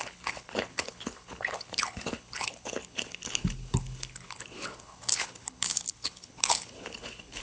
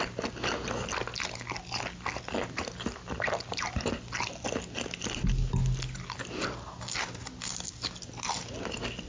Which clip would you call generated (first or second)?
first